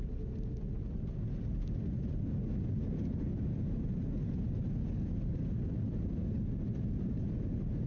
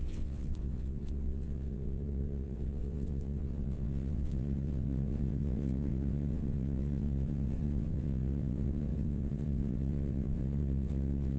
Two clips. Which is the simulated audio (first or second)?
second